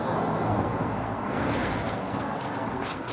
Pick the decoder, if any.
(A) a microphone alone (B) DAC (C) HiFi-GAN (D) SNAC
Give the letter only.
D